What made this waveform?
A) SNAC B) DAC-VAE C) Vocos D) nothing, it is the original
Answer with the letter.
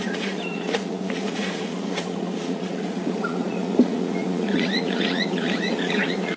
C